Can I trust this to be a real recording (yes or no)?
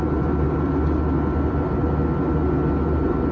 yes